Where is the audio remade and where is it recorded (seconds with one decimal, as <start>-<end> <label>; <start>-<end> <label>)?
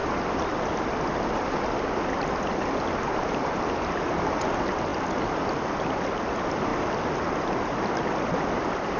0.0-9.0 recorded